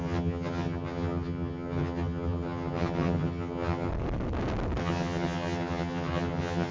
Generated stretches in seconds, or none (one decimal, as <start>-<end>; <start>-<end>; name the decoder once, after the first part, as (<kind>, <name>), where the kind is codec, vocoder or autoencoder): 0.0-3.9 (vocoder, HiFi-GAN); 4.8-6.7